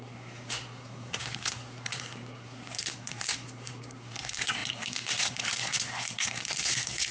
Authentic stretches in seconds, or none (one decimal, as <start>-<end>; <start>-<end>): none